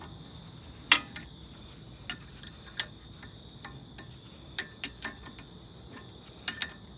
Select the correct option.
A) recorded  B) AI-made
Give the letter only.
A